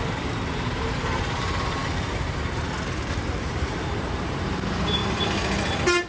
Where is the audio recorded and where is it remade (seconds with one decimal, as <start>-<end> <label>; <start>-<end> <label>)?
0.0-5.0 remade; 5.0-6.1 recorded